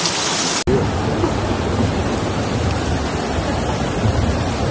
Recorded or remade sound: recorded